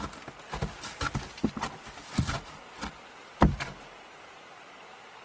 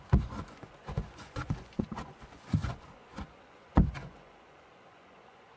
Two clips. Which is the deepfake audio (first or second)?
second